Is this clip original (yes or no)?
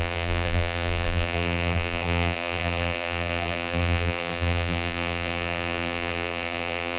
no